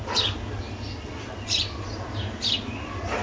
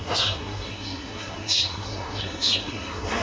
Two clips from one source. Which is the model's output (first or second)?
second